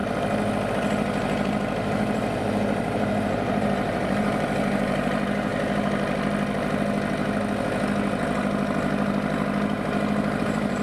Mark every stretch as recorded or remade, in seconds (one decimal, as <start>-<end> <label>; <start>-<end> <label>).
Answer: 0.0-0.7 recorded; 0.7-5.5 remade; 5.5-10.4 recorded; 10.4-10.8 remade